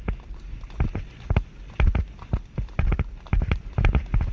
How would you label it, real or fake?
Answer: real